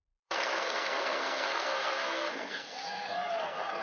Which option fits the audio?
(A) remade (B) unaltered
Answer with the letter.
A